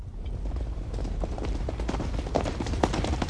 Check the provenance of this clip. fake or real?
real